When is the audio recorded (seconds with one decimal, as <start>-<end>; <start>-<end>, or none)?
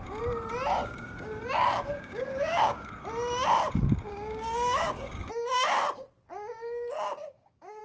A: 0.0-0.8; 1.4-1.9; 2.9-4.1; 5.3-6.6